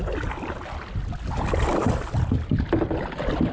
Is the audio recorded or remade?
recorded